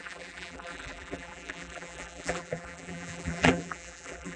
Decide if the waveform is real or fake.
fake